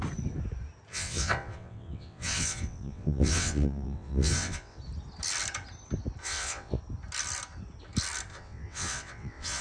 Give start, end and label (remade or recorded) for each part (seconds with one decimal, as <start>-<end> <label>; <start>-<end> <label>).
0.0-0.9 recorded; 0.9-4.8 remade; 4.8-6.2 recorded; 6.2-6.8 remade; 6.8-8.3 recorded; 8.3-9.6 remade